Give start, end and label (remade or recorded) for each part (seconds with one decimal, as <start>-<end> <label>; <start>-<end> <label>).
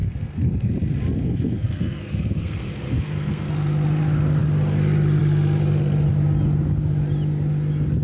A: 0.0-0.7 remade; 0.7-1.2 recorded; 1.2-3.5 remade; 3.5-8.0 recorded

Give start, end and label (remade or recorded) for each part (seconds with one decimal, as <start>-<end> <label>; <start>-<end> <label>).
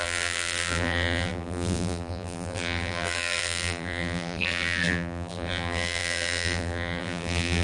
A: 0.0-7.6 remade